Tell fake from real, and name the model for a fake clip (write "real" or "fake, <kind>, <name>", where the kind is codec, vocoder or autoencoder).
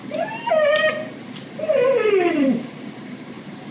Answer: real